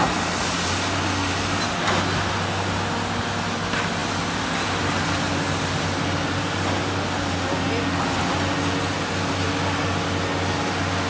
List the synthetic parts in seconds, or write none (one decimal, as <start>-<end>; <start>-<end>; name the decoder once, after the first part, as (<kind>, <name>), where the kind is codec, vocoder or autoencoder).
none